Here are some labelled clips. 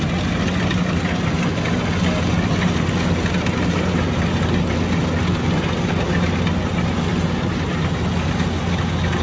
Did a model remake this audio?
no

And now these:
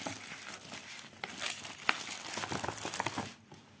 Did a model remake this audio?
no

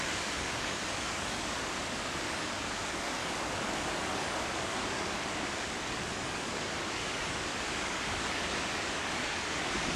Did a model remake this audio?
yes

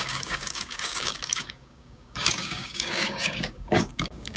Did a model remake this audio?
yes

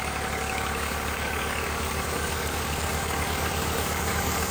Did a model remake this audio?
yes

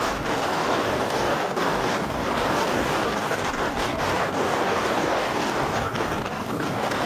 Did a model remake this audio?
yes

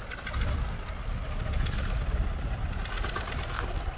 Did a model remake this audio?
no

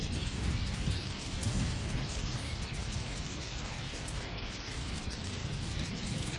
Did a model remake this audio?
yes